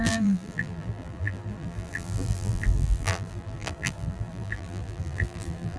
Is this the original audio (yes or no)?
no